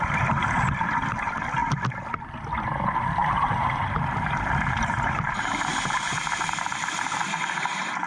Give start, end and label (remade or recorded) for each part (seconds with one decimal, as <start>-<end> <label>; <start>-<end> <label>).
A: 0.0-3.2 recorded; 3.2-8.1 remade